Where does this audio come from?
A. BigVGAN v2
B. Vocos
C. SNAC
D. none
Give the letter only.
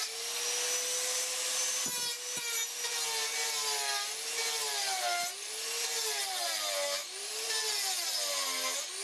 D